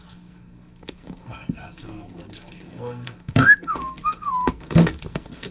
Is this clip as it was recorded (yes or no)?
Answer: no